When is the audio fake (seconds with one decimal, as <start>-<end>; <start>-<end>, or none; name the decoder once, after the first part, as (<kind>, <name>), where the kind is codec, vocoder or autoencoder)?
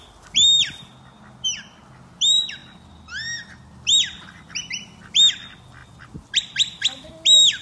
none